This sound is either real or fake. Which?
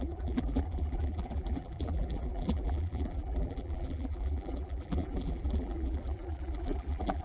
fake